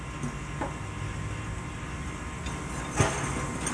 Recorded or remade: recorded